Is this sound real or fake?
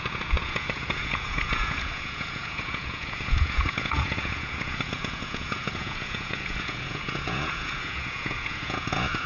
fake